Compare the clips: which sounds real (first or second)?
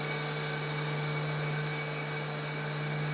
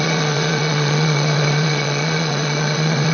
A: first